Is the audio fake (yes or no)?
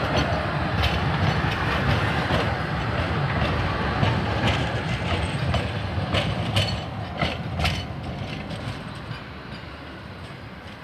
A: no